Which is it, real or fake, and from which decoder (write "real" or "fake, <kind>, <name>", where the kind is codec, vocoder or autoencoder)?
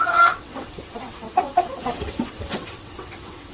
fake, vocoder, WaveNeXt